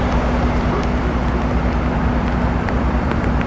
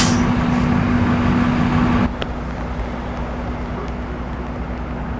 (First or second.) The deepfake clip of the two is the first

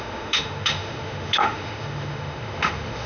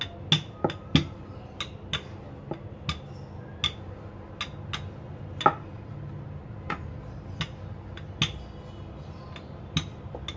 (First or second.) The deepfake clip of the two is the first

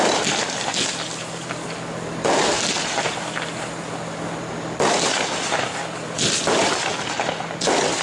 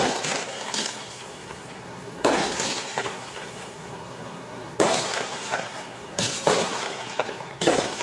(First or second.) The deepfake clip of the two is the second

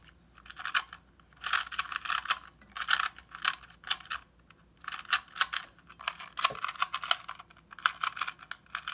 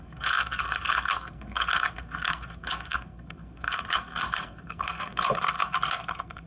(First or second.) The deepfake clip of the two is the second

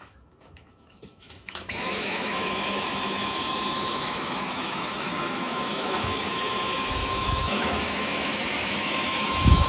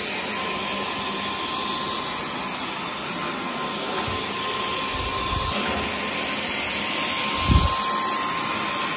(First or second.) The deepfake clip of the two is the first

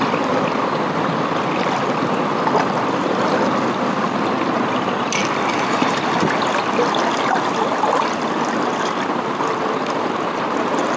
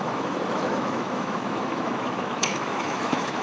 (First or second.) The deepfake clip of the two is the second